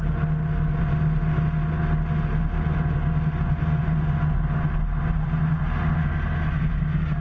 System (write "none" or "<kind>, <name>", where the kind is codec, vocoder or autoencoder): none